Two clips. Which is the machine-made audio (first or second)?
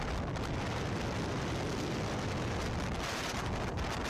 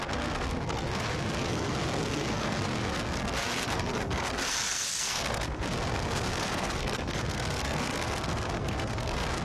second